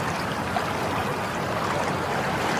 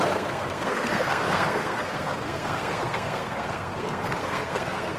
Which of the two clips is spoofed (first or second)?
second